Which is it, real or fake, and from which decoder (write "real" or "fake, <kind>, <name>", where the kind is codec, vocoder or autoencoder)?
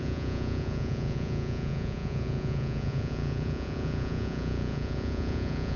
fake, vocoder, Vocos